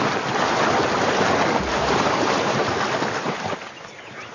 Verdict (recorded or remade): remade